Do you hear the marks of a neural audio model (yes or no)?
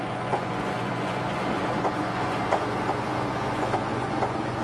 yes